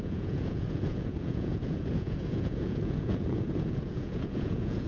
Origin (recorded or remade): remade